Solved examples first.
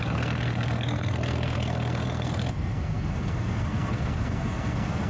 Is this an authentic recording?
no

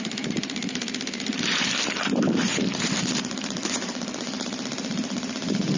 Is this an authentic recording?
no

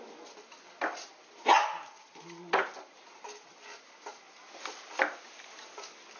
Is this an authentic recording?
yes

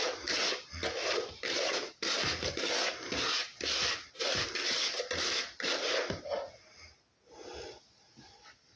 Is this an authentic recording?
yes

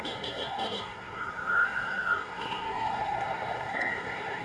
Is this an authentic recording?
no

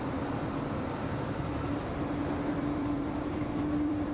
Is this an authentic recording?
no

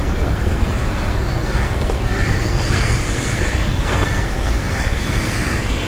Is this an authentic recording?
no